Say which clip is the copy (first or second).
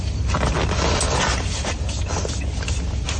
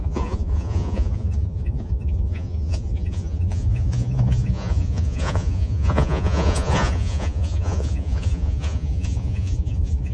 second